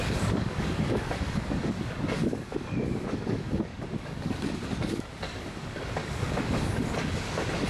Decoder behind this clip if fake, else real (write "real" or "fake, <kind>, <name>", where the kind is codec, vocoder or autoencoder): fake, codec, DAC